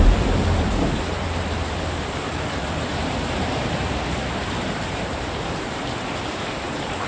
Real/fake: fake